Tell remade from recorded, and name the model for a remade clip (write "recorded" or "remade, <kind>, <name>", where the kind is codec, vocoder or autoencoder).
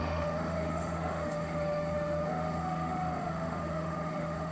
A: remade, autoencoder, DAC-VAE